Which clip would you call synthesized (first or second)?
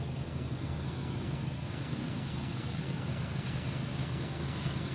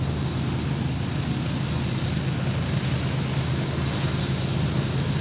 first